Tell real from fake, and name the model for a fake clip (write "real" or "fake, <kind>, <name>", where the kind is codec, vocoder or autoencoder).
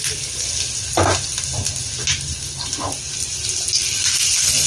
real